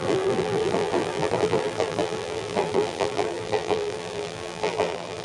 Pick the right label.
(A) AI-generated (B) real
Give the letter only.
A